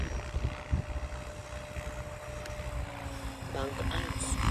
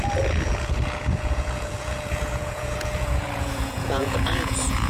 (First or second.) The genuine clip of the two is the first